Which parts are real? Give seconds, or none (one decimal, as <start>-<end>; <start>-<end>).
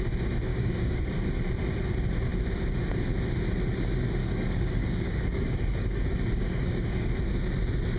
0.0-0.5; 1.1-4.2; 7.1-8.0